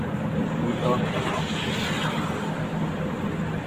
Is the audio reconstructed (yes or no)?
no